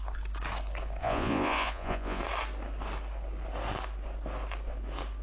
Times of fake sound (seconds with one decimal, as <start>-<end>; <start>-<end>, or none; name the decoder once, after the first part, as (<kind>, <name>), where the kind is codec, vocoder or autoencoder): 1.0-2.2 (vocoder, Vocos)